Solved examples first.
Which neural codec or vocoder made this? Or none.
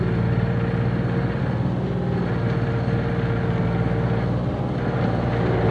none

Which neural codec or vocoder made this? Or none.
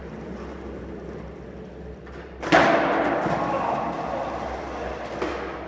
none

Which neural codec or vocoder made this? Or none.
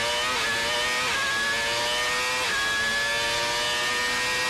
none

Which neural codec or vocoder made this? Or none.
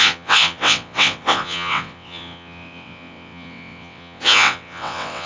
vocoder, WaveNeXt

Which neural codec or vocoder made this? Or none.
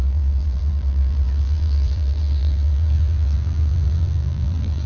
vocoder, BigVGAN v2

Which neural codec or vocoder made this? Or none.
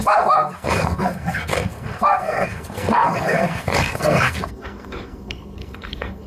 codec, SNAC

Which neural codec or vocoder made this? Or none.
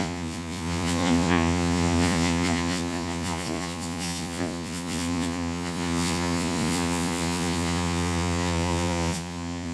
vocoder, Vocos